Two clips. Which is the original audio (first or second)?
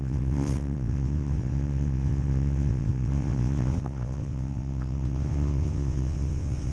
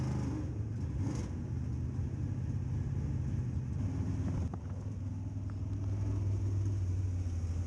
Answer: second